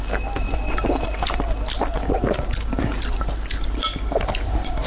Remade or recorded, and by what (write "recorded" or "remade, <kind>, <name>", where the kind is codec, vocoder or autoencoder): recorded